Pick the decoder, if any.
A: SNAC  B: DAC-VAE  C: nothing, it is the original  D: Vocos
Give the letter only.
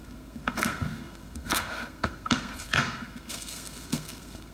A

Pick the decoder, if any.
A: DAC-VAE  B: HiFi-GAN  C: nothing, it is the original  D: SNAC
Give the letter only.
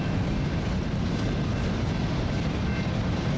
C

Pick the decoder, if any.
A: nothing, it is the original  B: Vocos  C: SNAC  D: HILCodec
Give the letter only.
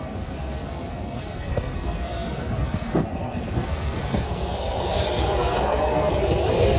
C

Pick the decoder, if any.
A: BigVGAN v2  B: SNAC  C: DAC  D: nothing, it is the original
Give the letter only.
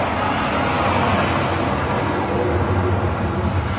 D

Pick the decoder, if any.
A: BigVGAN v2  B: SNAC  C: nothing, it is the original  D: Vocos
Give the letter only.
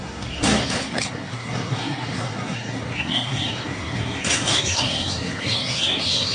B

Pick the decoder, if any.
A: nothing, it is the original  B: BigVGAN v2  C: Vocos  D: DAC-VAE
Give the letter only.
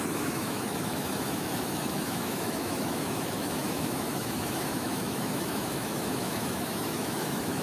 D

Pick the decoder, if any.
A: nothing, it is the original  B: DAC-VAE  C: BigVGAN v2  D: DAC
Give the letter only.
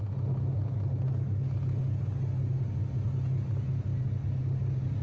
A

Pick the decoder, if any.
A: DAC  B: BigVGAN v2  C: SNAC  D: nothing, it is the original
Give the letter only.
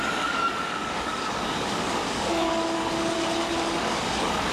A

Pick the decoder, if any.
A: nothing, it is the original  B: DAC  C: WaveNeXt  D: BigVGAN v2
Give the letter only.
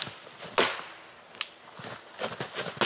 A